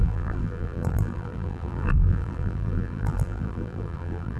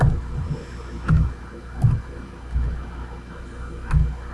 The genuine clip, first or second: second